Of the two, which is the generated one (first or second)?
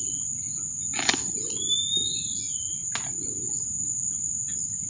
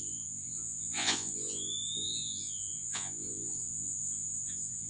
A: second